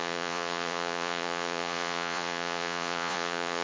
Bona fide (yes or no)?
no